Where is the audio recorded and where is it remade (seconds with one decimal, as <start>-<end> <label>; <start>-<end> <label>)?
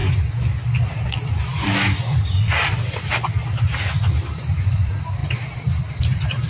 0.0-5.2 recorded; 5.2-6.5 remade